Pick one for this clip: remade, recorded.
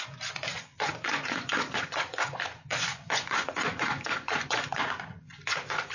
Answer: remade